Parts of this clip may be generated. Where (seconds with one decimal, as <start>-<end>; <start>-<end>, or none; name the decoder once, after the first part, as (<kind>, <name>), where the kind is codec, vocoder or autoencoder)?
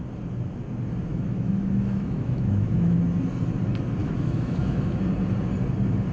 1.1-3.0 (autoencoder, DAC-VAE); 4.0-5.0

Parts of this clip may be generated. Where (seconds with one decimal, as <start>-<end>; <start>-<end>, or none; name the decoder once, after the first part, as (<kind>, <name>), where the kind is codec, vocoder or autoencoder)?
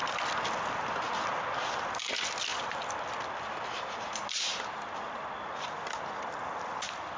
0.0-2.1 (vocoder, BigVGAN v2); 2.5-4.6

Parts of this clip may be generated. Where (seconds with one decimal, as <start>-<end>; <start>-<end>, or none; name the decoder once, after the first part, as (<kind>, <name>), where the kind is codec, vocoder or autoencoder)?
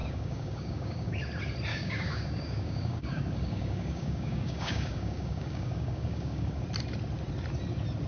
0.0-1.2 (codec, DAC); 1.7-6.6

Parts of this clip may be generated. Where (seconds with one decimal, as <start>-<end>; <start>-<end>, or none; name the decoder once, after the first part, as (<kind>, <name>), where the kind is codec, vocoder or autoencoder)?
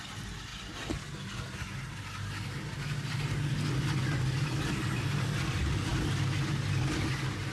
none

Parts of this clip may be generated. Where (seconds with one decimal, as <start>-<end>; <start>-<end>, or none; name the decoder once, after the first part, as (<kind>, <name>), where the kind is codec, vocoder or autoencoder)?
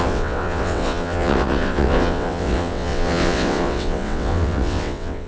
0.0-5.3 (vocoder, WaveNeXt)